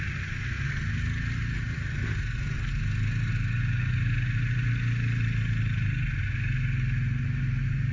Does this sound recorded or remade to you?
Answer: recorded